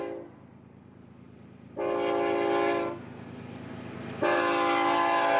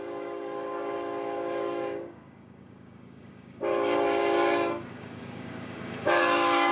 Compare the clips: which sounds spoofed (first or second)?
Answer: second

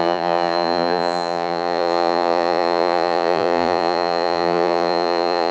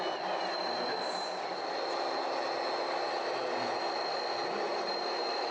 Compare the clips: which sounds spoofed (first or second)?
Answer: first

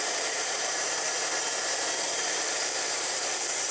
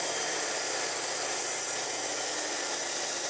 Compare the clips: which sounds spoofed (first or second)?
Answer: first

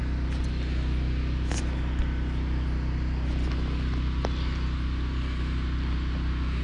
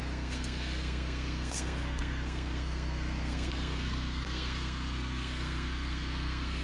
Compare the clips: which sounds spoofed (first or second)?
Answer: second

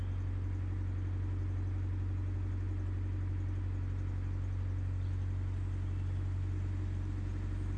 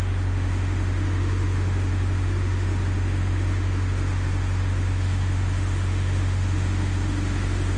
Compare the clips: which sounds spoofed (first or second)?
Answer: second